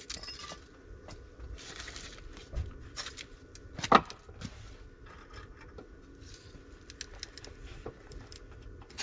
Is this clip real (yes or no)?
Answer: yes